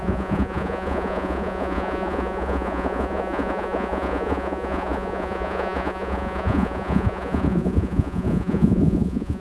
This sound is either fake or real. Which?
fake